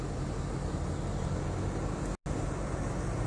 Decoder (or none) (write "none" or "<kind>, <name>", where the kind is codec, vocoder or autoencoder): none